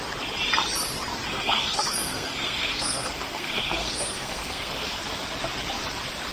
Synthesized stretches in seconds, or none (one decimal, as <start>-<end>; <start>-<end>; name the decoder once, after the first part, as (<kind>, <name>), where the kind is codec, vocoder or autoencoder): 1.3-5.1 (codec, SNAC)